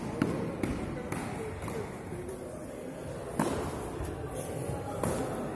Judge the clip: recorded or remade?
recorded